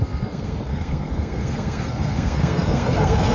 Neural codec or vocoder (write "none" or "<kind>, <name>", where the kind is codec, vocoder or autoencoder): codec, SNAC